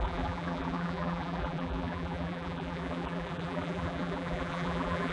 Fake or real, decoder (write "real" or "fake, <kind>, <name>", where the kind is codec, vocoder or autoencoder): fake, vocoder, BigVGAN v2